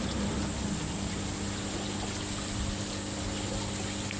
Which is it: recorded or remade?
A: recorded